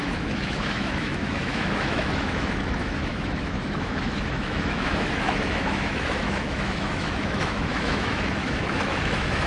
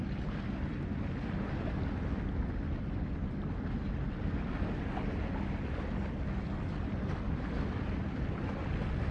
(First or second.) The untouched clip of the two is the second